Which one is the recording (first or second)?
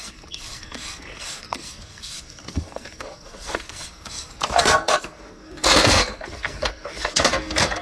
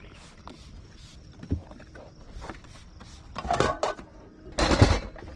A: second